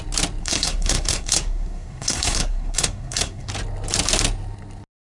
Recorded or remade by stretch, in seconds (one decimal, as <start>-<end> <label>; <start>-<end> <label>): 0.0-0.4 recorded; 0.4-3.5 remade; 3.5-5.1 recorded